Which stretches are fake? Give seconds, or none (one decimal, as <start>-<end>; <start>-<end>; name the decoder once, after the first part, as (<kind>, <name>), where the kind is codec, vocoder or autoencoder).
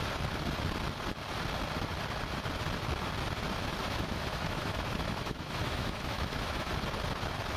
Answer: 3.8-6.7 (autoencoder, DAC-VAE)